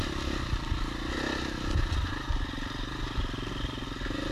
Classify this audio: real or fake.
real